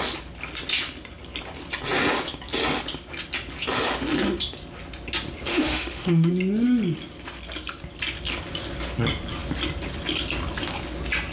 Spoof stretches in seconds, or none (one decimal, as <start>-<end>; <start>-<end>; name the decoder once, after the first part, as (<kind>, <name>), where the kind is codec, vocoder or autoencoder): 5.5-6.3 (autoencoder, DAC-VAE)